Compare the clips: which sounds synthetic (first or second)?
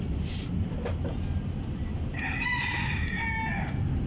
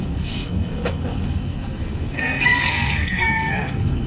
second